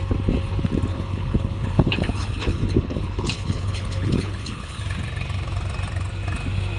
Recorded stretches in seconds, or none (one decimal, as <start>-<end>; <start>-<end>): 0.0-0.9; 4.8-6.8